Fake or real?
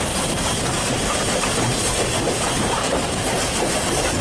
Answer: real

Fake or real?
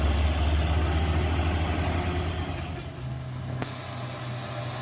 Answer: real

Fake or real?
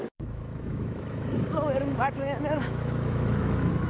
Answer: fake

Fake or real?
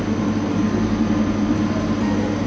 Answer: real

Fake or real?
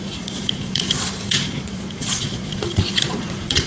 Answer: fake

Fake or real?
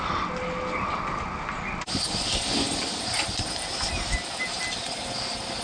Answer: real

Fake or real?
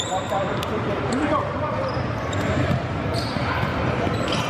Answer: fake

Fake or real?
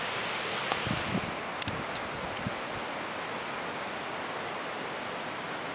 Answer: real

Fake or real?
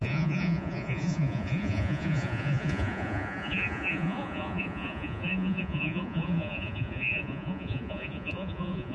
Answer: fake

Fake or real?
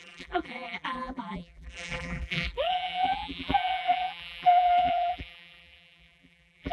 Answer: fake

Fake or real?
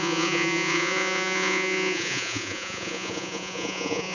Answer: fake